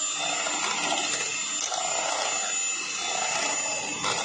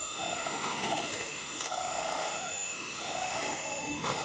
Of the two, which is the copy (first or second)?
second